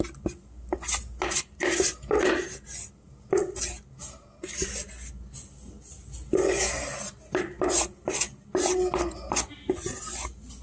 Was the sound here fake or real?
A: real